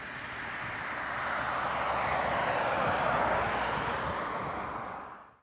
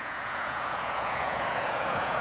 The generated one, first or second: second